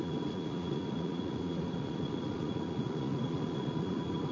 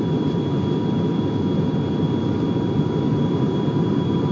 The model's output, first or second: first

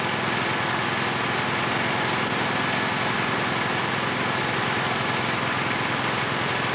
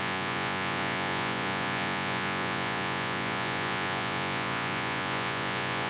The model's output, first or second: second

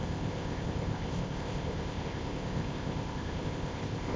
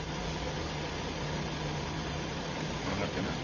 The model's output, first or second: first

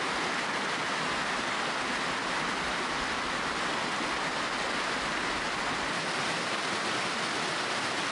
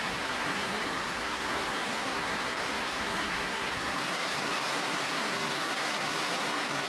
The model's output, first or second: second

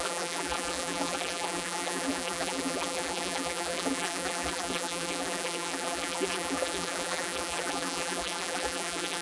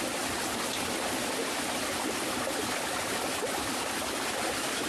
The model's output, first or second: first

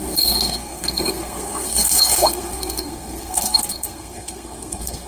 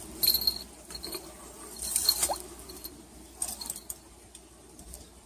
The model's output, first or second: first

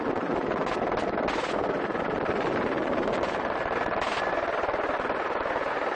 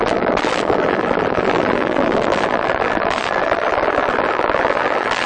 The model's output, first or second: second